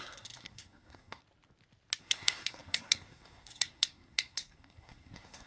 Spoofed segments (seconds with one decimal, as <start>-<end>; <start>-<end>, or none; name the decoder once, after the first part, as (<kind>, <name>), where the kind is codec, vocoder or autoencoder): 0.0-1.2 (codec, SNAC); 2.0-5.5